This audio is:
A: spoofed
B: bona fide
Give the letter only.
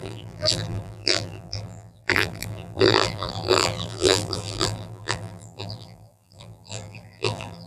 A